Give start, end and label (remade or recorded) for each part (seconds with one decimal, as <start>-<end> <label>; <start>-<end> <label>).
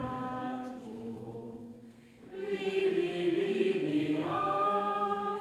0.0-5.4 remade